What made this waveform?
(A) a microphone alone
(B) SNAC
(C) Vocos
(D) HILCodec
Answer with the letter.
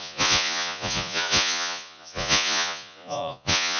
C